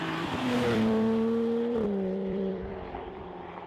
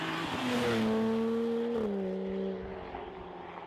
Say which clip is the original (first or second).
second